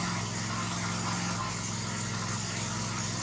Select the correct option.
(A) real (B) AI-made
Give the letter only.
A